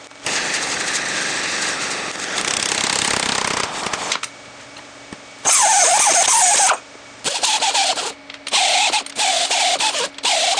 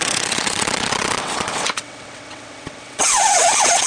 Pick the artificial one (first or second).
second